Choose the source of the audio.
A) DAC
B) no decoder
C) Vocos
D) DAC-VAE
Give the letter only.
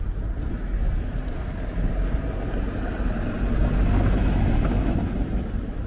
B